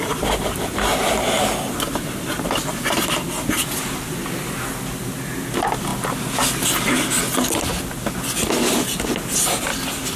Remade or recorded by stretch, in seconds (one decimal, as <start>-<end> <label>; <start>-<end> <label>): 0.0-10.2 recorded

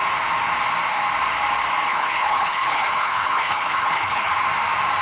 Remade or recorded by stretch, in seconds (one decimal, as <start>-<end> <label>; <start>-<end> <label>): 0.0-1.9 recorded; 1.9-4.3 remade; 4.3-5.0 recorded